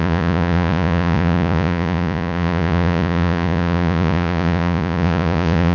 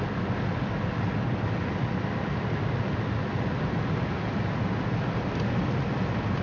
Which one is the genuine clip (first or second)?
second